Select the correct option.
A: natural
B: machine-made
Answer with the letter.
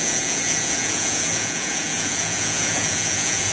B